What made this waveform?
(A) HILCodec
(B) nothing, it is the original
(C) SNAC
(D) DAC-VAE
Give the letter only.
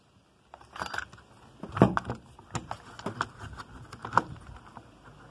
B